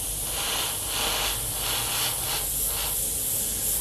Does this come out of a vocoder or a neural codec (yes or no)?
no